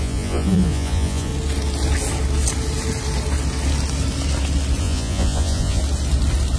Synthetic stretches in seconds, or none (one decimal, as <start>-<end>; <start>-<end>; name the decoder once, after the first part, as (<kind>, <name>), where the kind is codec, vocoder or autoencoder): 0.0-1.3 (vocoder, Vocos); 4.8-5.8